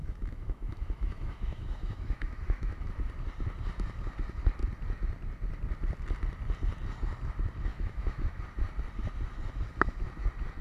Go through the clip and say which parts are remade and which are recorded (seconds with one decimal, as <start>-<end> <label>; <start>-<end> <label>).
0.0-2.9 remade; 2.9-7.7 recorded; 7.7-8.4 remade; 8.4-10.6 recorded